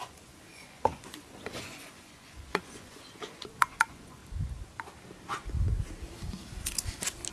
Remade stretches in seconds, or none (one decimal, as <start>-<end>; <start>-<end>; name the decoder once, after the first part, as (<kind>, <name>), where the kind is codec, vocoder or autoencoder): 0.0-4.2 (vocoder, Vocos)